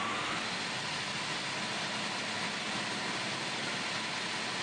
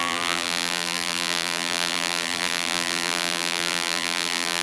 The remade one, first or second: second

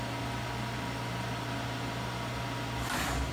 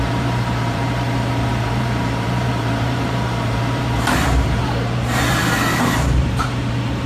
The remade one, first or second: second